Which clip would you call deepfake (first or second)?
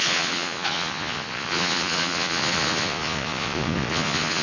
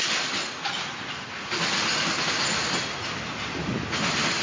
first